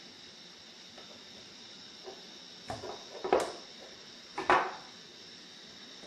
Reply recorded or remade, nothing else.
recorded